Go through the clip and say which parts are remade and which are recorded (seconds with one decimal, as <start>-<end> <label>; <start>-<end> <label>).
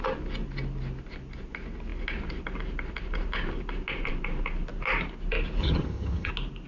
0.0-5.6 recorded; 5.6-6.3 remade; 6.3-6.7 recorded